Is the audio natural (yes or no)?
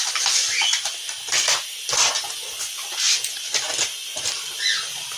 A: yes